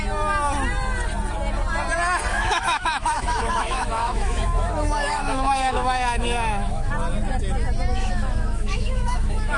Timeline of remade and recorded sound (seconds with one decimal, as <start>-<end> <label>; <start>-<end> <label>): 0.0-2.3 recorded; 2.3-6.9 remade; 6.9-7.9 recorded; 7.9-9.6 remade